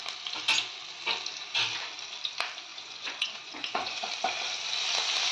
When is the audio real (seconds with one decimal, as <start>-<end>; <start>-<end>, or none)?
0.0-2.7; 4.1-5.3